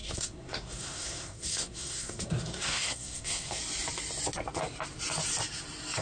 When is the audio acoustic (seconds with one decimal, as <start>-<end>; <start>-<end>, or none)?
3.6-6.0